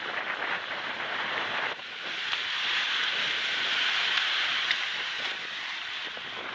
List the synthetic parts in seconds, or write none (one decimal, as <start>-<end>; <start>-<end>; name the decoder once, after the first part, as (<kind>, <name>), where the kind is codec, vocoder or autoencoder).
none